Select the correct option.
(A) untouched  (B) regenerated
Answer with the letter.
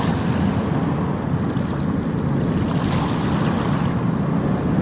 A